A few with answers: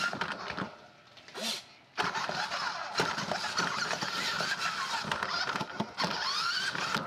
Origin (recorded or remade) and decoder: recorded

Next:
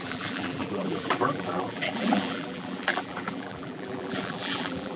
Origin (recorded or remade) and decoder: remade, vocoder, BigVGAN v2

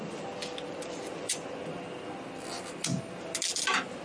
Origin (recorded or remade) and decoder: recorded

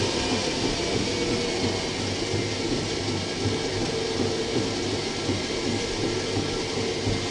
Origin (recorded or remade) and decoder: recorded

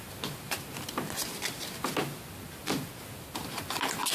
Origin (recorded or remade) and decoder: recorded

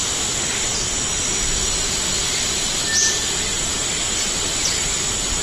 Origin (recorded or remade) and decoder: recorded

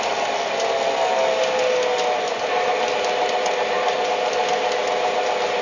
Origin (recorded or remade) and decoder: recorded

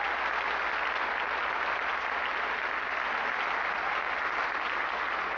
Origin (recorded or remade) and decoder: recorded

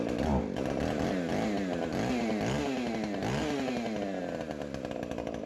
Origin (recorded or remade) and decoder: recorded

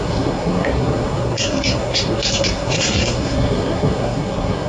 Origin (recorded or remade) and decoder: remade, codec, SNAC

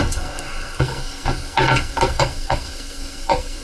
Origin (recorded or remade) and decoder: remade, codec, SNAC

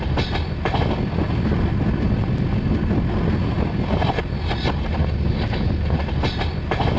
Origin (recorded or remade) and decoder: recorded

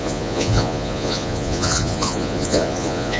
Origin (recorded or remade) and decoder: remade, vocoder, Vocos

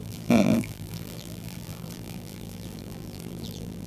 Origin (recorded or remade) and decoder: remade, vocoder, BigVGAN v2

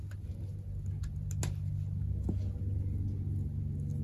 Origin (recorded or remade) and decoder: recorded